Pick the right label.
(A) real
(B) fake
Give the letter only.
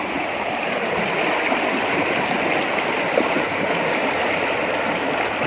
A